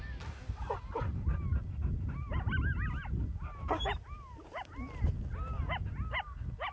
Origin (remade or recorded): recorded